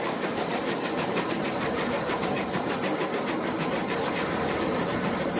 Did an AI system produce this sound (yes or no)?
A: yes